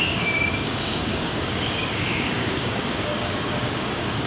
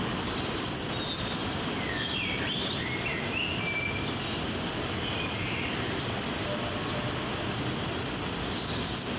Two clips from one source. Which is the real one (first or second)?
second